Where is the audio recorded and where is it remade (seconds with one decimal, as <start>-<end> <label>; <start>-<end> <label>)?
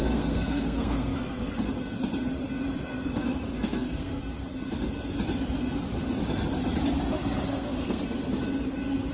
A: 0.0-1.7 remade; 1.7-2.9 recorded; 2.9-4.2 remade; 4.2-7.5 recorded; 7.5-8.0 remade; 8.0-9.1 recorded